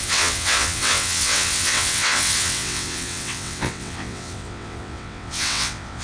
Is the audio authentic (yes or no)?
no